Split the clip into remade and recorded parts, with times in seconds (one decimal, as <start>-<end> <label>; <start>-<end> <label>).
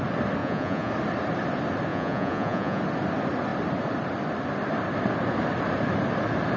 0.0-0.4 recorded; 0.4-0.9 remade; 0.9-1.9 recorded; 1.9-2.8 remade; 2.8-6.6 recorded